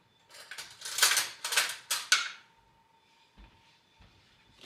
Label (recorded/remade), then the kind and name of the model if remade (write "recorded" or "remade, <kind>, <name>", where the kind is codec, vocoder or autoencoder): recorded